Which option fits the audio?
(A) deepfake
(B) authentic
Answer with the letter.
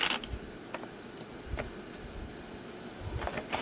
B